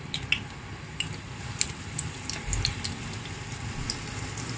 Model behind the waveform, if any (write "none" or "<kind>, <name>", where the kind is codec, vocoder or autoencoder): none